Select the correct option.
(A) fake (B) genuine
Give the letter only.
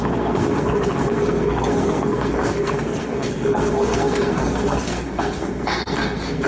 A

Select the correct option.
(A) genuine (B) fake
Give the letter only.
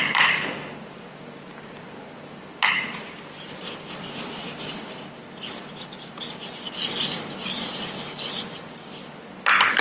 A